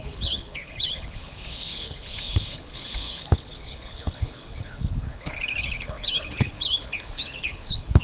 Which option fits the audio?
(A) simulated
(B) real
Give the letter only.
A